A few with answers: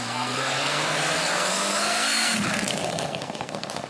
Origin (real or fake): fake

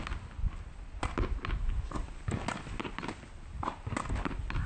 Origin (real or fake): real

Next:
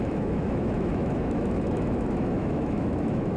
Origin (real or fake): fake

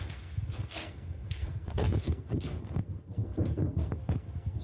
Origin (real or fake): fake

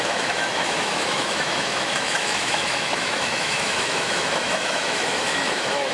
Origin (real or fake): fake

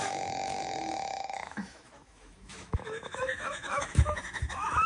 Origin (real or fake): fake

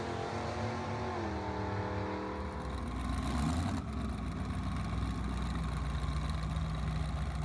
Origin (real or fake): real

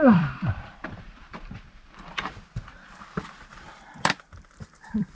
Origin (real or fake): fake